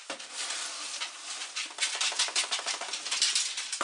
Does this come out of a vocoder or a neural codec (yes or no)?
yes